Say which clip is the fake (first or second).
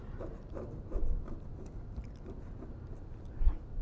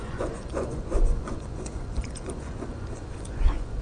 second